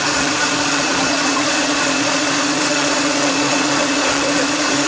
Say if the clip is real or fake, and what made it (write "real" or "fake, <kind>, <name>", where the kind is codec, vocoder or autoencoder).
fake, vocoder, Vocos